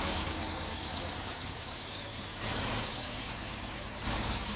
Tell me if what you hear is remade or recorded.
remade